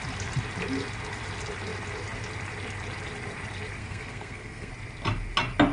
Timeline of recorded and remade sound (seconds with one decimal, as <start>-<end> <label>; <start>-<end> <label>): 0.0-3.8 recorded; 3.8-4.7 remade; 4.7-5.7 recorded